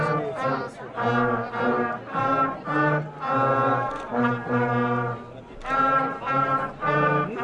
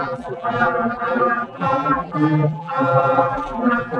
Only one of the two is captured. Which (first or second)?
first